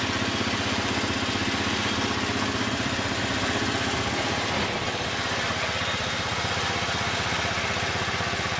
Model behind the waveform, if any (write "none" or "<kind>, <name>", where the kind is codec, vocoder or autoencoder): none